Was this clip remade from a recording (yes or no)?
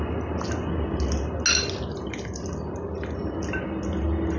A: no